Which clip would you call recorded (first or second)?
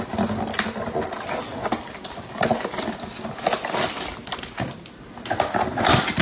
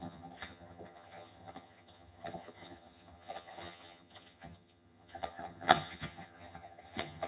first